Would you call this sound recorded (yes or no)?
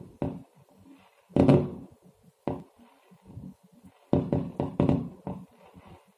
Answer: yes